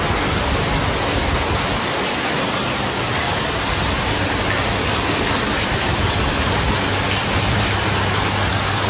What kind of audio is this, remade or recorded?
recorded